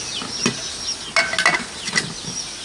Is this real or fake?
real